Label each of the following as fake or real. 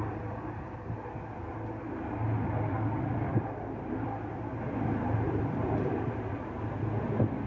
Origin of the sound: fake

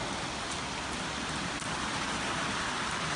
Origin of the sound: real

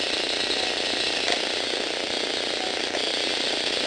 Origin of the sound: real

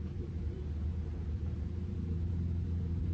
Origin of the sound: fake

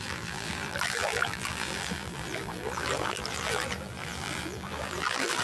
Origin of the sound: fake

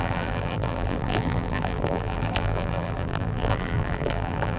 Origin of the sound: fake